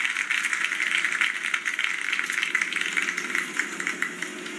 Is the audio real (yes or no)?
yes